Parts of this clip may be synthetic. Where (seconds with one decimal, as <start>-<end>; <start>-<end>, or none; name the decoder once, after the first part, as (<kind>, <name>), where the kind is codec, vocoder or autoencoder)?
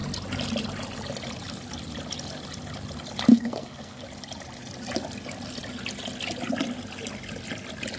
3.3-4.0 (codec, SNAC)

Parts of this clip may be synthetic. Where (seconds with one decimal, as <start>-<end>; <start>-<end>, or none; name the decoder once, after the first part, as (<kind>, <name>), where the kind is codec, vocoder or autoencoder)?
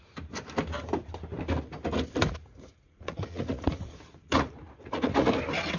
2.4-5.3 (vocoder, Vocos)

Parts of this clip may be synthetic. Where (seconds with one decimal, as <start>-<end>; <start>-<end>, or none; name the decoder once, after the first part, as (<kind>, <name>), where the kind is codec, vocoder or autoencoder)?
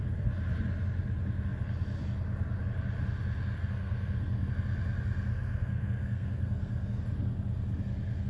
3.6-4.5 (codec, SNAC); 5.3-7.0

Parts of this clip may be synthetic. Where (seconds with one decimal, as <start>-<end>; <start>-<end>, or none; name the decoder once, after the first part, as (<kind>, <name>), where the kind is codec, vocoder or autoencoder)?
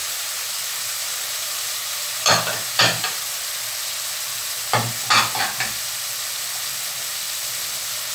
0.0-0.5 (vocoder, BigVGAN v2); 1.0-3.2